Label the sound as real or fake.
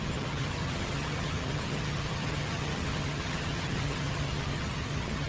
fake